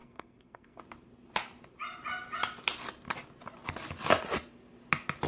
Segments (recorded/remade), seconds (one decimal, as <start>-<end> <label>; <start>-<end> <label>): 0.0-0.8 remade; 0.8-5.3 recorded